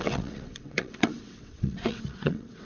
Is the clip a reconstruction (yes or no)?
yes